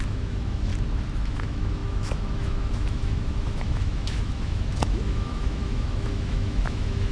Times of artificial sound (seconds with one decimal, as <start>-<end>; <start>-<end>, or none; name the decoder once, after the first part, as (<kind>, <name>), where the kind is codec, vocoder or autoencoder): 0.0-0.7 (autoencoder, DAC-VAE); 1.2-7.1